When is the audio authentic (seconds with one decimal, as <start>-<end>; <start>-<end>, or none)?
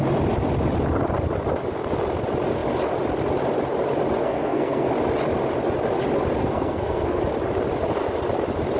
0.0-4.2; 4.9-6.4; 7.2-8.8